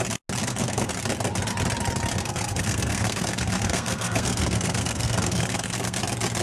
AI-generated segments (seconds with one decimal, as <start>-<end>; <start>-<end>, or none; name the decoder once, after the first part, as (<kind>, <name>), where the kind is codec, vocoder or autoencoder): 0.4-0.9 (codec, SNAC); 2.2-6.0